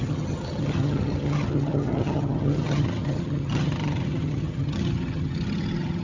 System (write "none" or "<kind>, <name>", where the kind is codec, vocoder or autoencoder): vocoder, HiFi-GAN